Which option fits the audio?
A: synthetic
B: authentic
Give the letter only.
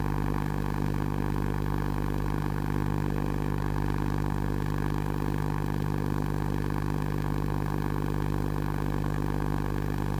A